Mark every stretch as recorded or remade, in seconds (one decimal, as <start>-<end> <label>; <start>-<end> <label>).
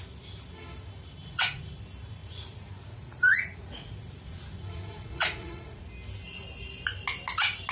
0.0-1.2 recorded; 1.2-1.8 remade; 1.8-2.2 recorded; 2.2-5.8 remade; 5.8-7.7 recorded